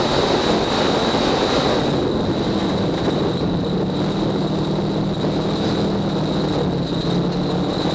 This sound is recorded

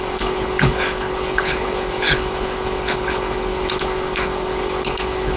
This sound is remade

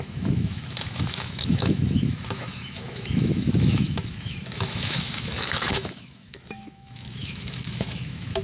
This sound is remade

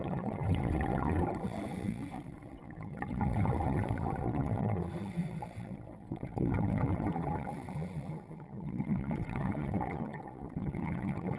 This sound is remade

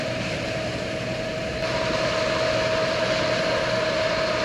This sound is remade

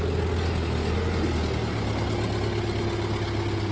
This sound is recorded